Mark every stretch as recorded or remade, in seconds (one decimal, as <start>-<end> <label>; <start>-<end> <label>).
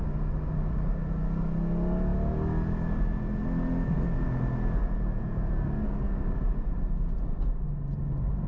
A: 0.0-8.5 recorded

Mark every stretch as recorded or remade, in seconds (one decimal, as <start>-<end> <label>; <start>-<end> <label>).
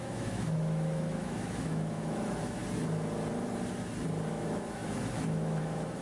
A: 0.0-2.6 remade; 2.6-4.3 recorded; 4.3-6.0 remade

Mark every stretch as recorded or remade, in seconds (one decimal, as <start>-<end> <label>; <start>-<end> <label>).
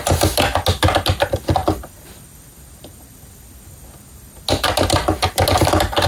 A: 0.0-6.1 recorded